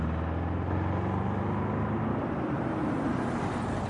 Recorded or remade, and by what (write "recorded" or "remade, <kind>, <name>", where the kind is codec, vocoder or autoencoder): recorded